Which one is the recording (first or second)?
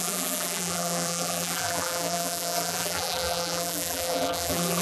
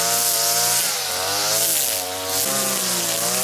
second